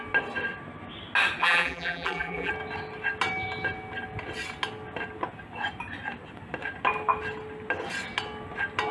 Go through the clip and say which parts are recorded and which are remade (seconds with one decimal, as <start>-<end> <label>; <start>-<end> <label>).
0.0-1.4 recorded; 1.4-2.5 remade; 2.5-8.9 recorded